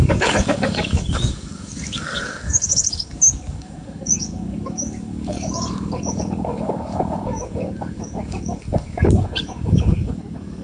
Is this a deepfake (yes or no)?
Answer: yes